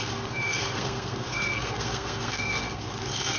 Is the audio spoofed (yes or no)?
yes